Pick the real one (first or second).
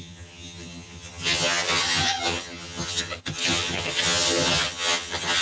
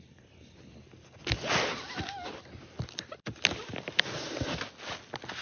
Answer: second